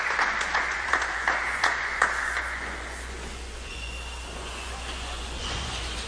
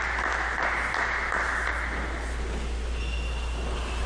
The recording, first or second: second